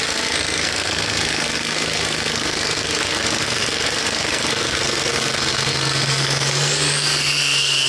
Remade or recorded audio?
remade